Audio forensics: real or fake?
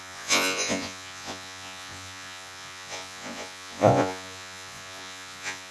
fake